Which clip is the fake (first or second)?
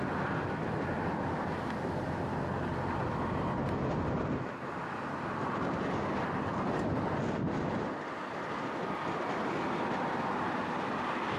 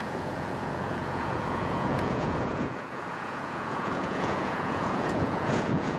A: second